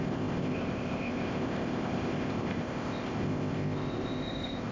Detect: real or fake fake